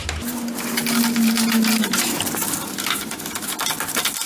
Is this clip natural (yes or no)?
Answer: yes